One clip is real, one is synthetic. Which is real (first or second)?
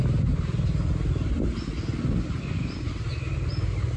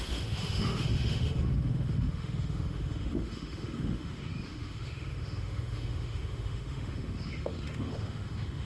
first